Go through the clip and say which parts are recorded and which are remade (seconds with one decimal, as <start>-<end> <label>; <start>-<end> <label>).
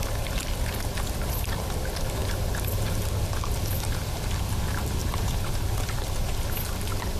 0.0-2.2 recorded; 2.2-3.0 remade; 3.0-5.0 recorded; 5.0-5.5 remade; 5.5-7.2 recorded